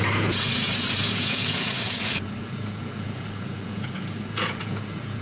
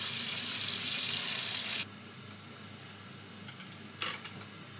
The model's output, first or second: first